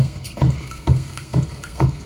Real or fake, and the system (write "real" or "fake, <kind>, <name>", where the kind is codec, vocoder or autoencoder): fake, codec, SNAC